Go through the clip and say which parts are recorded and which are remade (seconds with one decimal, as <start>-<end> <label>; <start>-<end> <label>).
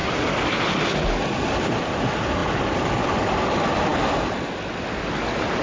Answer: 0.0-5.6 recorded